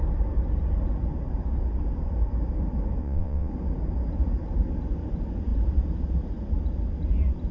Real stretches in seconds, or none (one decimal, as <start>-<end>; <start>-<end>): 0.0-3.0; 3.5-7.5